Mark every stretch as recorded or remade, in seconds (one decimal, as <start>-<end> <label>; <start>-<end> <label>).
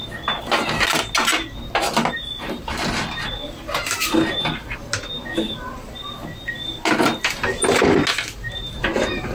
0.0-9.3 recorded